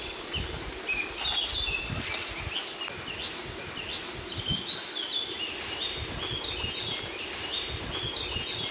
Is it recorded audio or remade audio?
recorded